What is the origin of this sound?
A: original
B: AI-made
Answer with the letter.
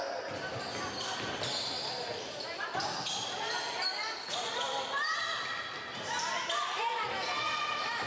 A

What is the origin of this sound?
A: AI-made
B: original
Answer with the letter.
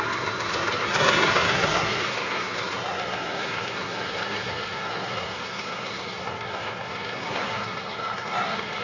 A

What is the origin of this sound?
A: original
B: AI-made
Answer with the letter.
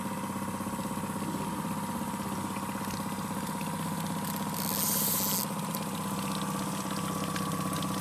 A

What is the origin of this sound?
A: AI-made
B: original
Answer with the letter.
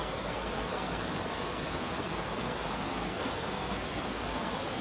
A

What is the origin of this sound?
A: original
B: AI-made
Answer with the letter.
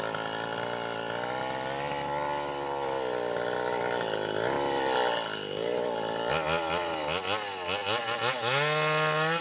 A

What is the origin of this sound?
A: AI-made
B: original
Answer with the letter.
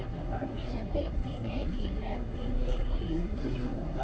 A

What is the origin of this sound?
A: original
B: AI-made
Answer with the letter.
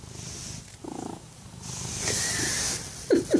A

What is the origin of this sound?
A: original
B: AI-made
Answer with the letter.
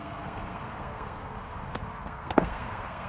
B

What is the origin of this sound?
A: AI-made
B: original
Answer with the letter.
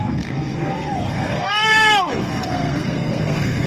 A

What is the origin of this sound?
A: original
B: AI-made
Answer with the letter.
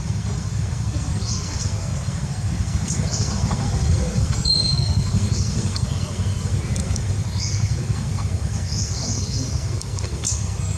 B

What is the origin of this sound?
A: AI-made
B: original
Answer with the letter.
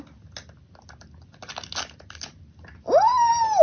B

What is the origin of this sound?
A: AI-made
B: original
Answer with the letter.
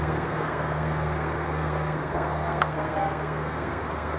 A